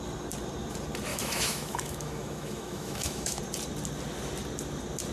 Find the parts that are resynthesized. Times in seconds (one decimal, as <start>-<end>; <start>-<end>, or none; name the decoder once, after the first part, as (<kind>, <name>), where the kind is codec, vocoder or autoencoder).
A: 1.1-3.4 (autoencoder, DAC-VAE)